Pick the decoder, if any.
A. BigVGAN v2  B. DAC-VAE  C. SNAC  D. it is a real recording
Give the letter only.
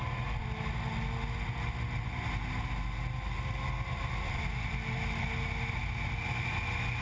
D